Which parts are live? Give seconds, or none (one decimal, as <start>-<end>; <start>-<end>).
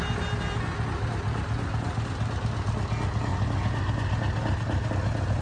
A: 0.0-5.4